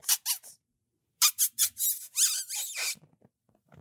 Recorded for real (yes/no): yes